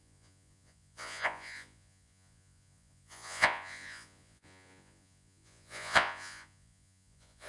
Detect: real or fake fake